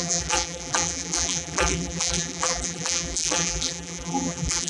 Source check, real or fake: fake